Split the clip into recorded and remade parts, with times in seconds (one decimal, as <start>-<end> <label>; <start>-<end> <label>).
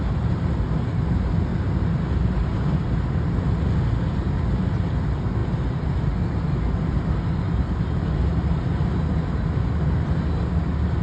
0.0-1.5 recorded; 1.5-3.0 remade; 3.0-11.0 recorded